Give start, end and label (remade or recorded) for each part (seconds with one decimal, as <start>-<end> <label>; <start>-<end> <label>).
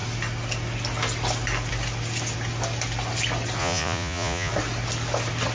0.0-3.6 recorded; 3.6-4.5 remade; 4.5-5.5 recorded